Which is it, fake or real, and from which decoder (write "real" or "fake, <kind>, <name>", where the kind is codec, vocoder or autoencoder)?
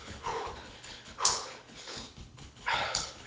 fake, codec, HILCodec